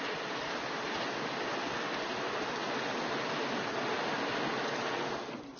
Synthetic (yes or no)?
no